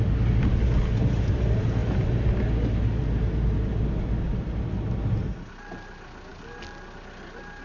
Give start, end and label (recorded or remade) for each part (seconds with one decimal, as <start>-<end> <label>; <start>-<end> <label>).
0.0-7.6 recorded